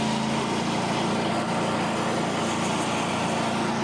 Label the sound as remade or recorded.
recorded